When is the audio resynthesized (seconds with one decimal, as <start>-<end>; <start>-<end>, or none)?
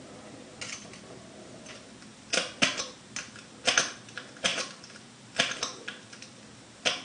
2.1-2.8; 4.5-6.4